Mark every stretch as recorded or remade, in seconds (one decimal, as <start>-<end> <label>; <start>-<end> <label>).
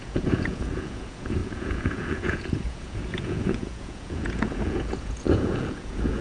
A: 0.0-6.2 remade